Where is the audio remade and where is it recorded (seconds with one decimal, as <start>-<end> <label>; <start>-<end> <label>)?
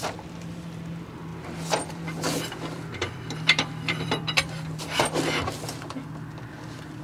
0.0-1.3 recorded; 1.3-5.5 remade; 5.5-7.0 recorded